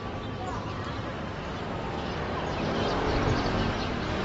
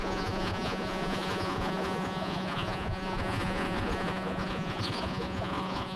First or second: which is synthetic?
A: second